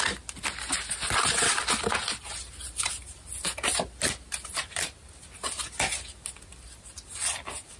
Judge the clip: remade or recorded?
recorded